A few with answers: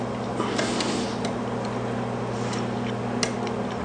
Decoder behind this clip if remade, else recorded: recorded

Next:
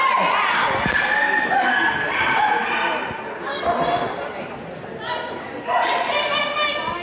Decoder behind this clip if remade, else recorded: recorded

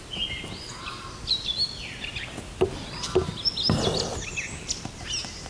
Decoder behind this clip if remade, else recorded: recorded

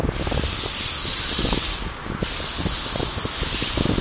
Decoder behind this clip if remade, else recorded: recorded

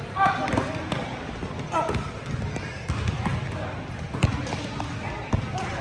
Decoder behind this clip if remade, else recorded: recorded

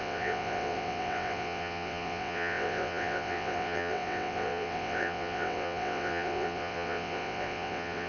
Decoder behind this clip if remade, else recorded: remade, vocoder, WaveNeXt